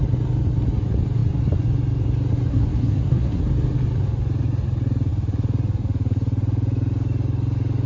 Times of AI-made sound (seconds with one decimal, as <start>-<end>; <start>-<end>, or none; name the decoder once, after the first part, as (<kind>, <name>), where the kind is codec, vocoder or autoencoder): 2.5-3.4 (codec, SNAC)